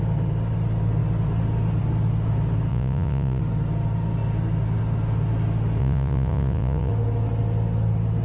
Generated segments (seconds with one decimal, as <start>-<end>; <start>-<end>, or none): 2.7-3.4; 5.8-6.9